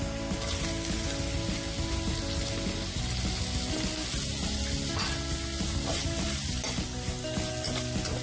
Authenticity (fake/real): real